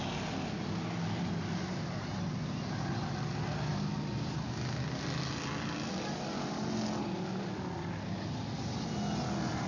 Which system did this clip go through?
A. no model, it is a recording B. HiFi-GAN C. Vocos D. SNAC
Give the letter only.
A